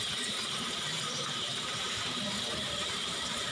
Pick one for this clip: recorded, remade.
remade